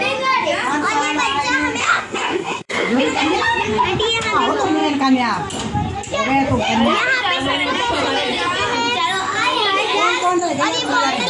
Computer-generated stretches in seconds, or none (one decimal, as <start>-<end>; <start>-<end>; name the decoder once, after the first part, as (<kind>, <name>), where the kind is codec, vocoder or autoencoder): 1.8-3.0 (codec, SNAC)